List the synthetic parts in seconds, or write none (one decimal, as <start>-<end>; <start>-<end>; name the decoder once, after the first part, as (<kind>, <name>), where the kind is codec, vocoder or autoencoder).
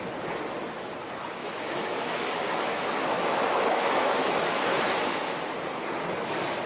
1.4-4.8 (autoencoder, DAC-VAE)